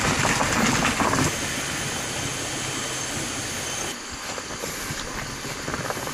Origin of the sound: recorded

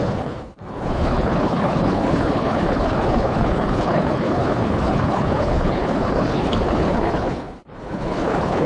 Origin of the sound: remade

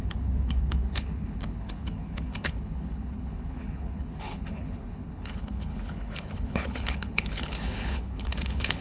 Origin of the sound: remade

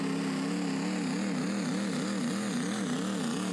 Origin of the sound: recorded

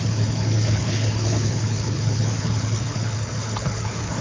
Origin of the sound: remade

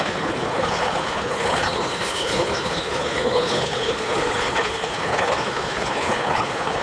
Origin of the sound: remade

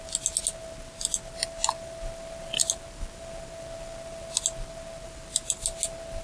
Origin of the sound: recorded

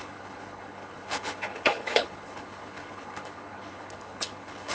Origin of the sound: remade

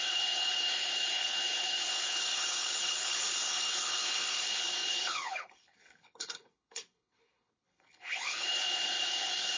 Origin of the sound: remade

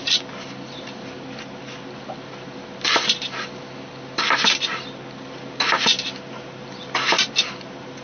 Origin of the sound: recorded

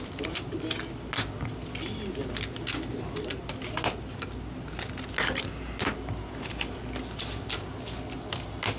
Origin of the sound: recorded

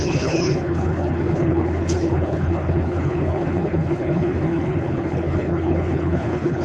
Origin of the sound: remade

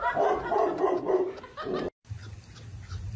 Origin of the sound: recorded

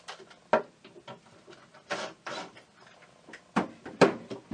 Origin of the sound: recorded